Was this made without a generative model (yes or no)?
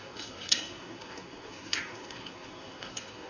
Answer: no